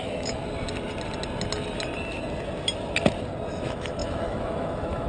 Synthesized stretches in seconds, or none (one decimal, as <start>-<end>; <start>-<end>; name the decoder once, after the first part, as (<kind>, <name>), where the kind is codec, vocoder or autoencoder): 0.0-0.4 (autoencoder, DAC-VAE); 3.5-5.1